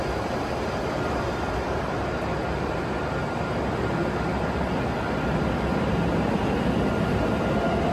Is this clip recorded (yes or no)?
yes